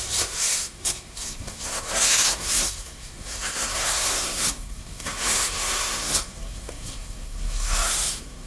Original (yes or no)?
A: no